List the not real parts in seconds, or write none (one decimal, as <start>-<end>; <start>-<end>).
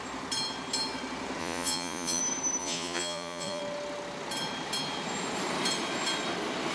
1.4-2.2; 2.6-3.6